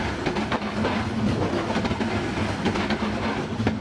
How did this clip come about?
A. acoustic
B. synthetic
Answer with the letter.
A